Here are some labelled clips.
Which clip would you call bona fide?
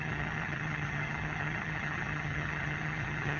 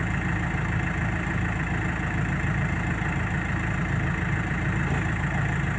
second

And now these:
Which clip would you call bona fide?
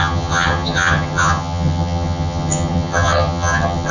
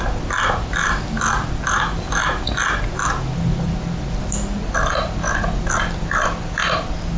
second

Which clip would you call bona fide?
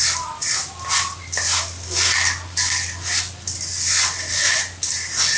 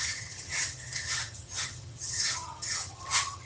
first